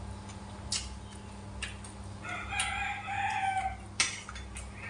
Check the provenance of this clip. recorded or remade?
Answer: recorded